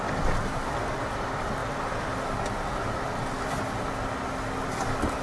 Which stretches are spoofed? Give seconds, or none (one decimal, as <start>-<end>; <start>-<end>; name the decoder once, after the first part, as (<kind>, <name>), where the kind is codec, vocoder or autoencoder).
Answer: none